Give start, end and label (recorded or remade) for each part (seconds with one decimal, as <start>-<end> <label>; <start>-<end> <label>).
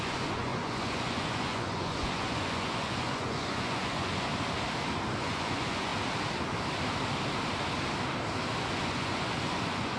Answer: 0.0-4.3 remade; 4.3-5.2 recorded; 5.2-5.9 remade; 5.9-8.6 recorded; 8.6-10.0 remade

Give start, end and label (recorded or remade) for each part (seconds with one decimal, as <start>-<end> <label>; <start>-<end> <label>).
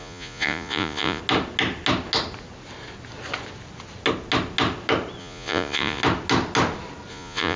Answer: 0.0-1.2 remade; 1.2-5.2 recorded; 5.2-6.0 remade; 6.0-7.1 recorded; 7.1-7.6 remade